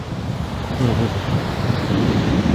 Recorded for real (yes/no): yes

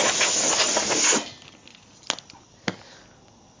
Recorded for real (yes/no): yes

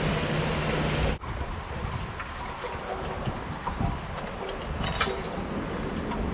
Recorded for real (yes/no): yes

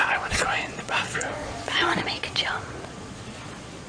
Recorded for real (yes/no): no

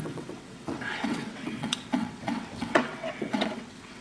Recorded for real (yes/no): no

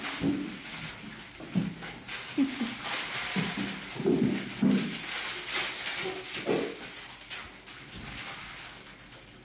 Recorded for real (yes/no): yes